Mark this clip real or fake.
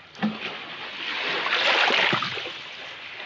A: real